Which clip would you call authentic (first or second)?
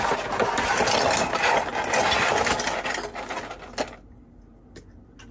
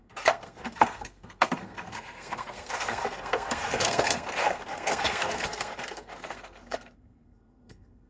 first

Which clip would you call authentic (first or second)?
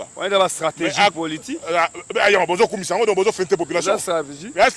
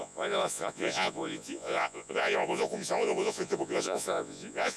first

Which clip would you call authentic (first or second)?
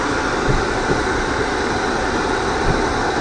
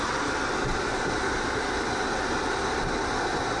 second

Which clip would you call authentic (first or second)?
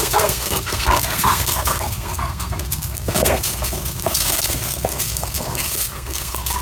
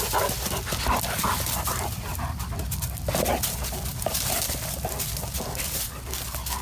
second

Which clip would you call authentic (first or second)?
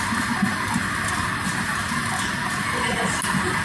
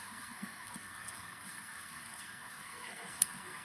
first